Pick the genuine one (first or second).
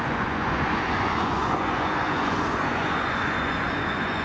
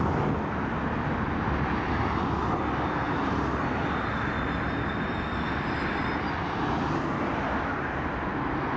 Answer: second